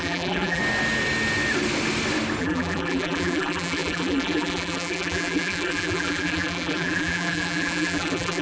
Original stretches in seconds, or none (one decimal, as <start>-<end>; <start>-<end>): 0.6-2.4